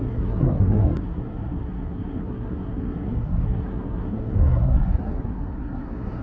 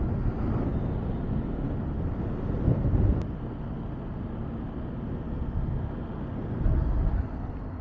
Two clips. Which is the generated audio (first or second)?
first